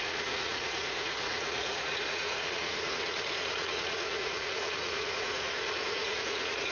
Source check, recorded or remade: remade